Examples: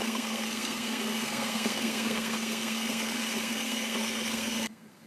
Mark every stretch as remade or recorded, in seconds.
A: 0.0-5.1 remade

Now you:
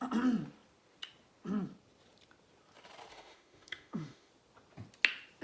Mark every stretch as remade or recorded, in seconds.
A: 0.0-3.1 recorded; 3.1-4.3 remade; 4.3-5.4 recorded

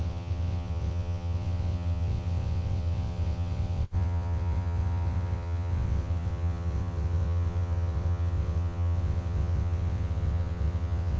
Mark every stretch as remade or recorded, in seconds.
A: 0.0-11.2 remade